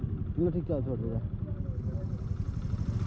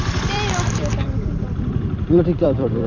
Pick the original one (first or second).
first